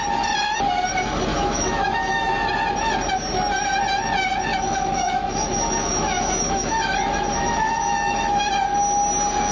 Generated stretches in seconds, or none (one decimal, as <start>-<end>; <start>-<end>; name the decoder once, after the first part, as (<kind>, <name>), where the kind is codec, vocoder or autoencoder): 1.3-2.3 (autoencoder, DAC-VAE); 4.5-8.4